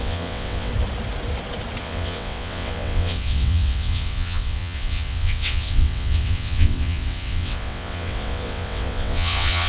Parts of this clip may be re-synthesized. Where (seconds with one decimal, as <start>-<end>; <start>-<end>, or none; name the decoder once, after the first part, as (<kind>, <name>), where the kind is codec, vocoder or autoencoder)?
0.0-0.7 (vocoder, WaveNeXt); 1.8-9.7